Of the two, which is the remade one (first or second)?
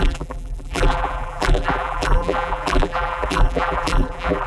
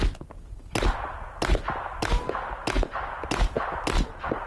first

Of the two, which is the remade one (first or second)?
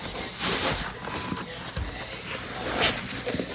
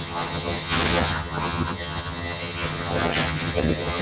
second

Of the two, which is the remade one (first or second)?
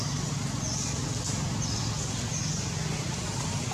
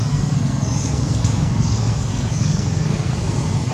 second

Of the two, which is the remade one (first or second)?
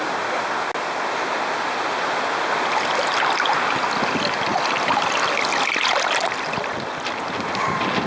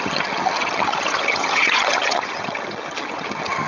second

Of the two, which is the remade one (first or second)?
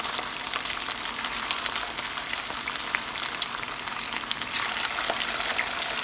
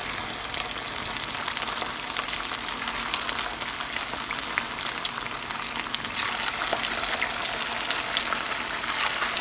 first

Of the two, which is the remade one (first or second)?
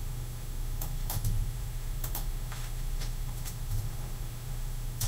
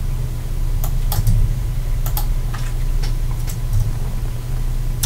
first